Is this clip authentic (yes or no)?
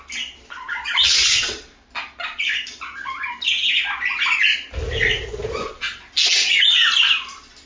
yes